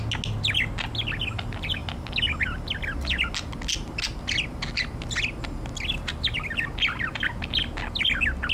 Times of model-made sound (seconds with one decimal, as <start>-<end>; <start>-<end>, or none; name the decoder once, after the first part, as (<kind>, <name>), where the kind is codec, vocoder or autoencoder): none